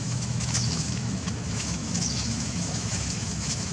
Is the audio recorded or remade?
remade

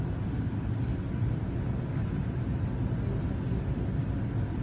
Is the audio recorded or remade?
recorded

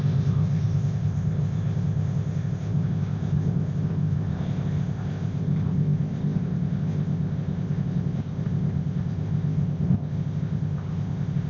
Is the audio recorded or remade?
remade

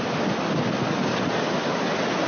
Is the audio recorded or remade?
recorded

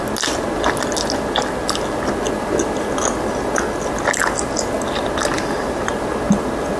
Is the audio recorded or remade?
recorded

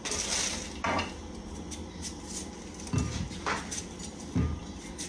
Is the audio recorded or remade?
recorded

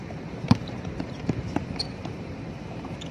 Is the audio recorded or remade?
remade